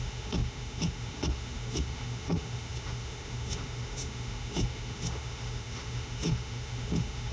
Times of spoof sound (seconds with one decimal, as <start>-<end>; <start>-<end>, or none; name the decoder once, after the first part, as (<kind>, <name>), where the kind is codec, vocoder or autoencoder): 0.0-7.3 (autoencoder, DAC-VAE)

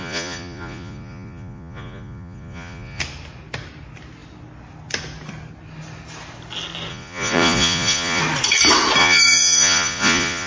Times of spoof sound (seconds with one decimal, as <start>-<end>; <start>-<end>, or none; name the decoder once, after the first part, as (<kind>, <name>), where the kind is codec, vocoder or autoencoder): 0.0-3.0 (vocoder, Vocos); 6.9-8.2; 9.0-10.5

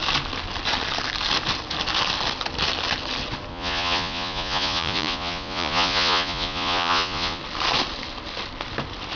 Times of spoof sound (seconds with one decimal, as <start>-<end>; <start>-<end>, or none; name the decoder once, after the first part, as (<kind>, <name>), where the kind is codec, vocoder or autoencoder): 3.5-7.4 (vocoder, Vocos)